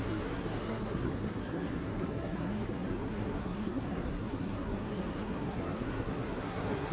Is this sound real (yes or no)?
no